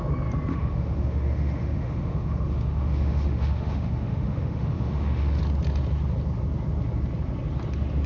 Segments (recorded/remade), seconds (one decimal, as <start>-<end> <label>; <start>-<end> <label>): 0.0-0.5 recorded; 0.5-5.4 remade; 5.4-8.1 recorded